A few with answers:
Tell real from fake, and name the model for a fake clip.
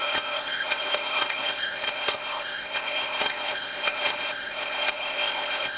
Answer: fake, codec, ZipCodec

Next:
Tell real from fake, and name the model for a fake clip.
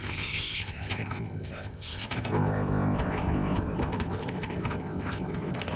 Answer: fake, codec, ZipCodec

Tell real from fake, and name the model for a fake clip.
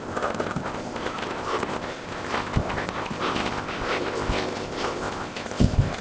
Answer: fake, codec, ZipCodec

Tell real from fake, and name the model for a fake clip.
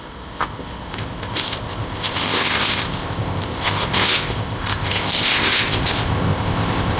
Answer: fake, codec, ZipCodec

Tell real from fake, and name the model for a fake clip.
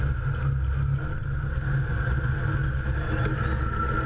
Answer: real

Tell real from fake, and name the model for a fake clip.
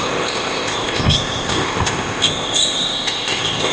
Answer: fake, codec, ZipCodec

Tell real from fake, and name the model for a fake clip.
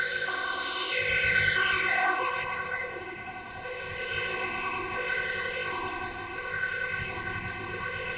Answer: fake, codec, ZipCodec